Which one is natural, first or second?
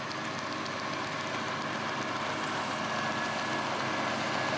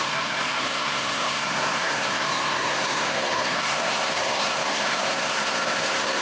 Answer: first